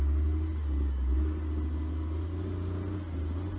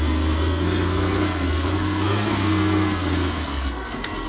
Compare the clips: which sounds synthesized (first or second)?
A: second